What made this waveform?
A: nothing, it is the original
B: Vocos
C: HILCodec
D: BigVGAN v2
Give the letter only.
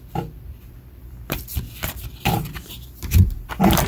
D